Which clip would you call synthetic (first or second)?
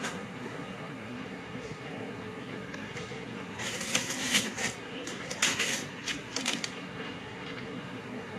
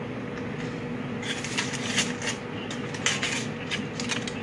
first